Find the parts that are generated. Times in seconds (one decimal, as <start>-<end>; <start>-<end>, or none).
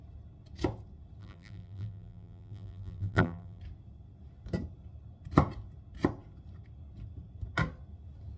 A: 1.2-3.6